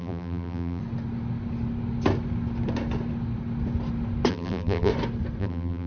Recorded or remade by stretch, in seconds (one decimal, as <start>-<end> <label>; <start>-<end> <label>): 0.0-0.8 remade; 0.8-4.3 recorded; 4.3-4.9 remade; 4.9-5.4 recorded; 5.4-5.9 remade